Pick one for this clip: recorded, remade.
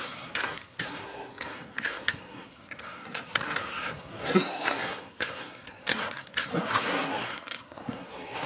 remade